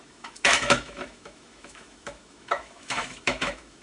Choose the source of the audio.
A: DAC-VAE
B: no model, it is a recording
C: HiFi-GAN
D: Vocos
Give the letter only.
A